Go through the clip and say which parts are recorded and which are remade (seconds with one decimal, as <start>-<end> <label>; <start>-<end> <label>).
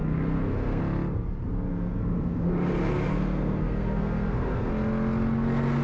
0.0-0.8 remade; 0.8-1.7 recorded; 1.7-2.5 remade; 2.5-3.1 recorded; 3.1-4.7 remade; 4.7-5.8 recorded